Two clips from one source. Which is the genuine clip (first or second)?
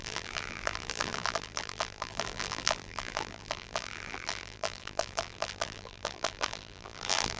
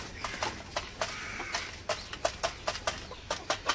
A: second